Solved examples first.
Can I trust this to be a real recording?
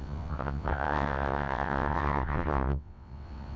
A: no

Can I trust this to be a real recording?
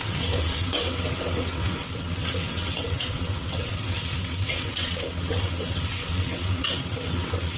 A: no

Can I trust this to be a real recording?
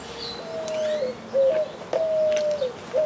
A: yes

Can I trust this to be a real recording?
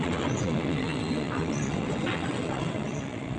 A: no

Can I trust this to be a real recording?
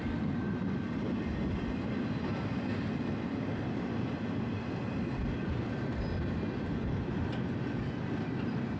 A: yes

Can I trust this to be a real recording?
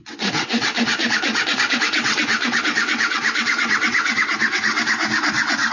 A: no